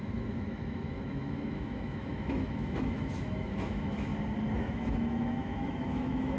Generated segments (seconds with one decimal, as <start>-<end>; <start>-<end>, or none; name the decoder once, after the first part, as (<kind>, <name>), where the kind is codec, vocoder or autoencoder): 0.0-4.1 (autoencoder, DAC-VAE); 4.6-6.4